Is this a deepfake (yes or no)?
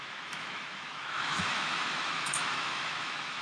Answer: yes